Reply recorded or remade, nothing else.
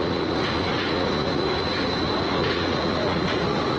remade